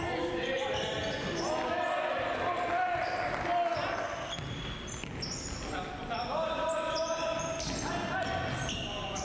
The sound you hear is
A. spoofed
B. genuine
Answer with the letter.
B